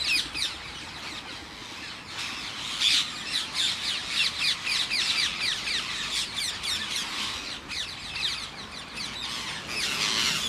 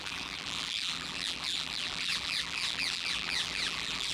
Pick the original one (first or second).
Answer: first